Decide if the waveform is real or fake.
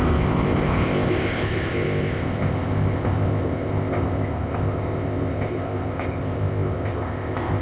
fake